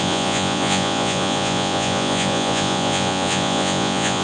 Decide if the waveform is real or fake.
fake